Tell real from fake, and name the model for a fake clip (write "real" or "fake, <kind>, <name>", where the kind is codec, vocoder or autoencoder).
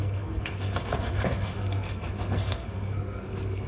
fake, codec, SNAC